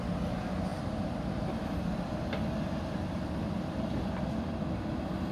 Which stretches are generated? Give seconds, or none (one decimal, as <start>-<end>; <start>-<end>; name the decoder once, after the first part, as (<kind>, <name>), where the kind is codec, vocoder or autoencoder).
0.7-3.7 (vocoder, BigVGAN v2)